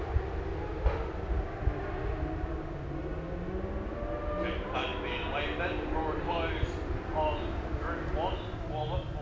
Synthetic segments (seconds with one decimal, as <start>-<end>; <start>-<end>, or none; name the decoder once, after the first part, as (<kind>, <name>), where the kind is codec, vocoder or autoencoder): none